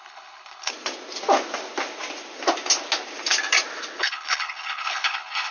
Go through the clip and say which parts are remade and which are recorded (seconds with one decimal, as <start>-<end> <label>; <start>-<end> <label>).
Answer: 0.0-0.7 remade; 0.7-4.0 recorded; 4.0-5.5 remade